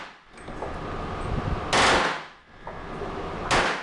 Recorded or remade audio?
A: recorded